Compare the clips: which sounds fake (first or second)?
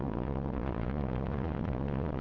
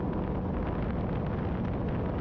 first